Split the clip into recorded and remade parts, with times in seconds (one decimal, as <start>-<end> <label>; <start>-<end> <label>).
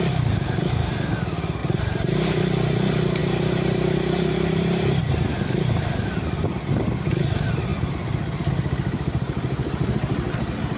0.0-1.6 recorded; 1.6-2.4 remade; 2.4-3.2 recorded; 3.2-5.0 remade; 5.0-10.8 recorded